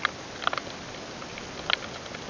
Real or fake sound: real